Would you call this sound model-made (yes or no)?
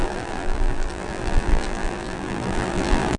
yes